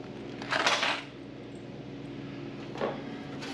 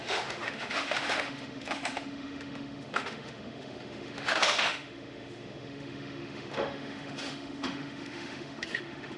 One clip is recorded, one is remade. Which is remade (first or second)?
second